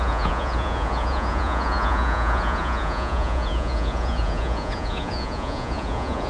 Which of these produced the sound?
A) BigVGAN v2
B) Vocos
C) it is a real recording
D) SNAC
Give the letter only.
B